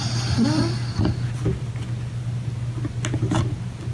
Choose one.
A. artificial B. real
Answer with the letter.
B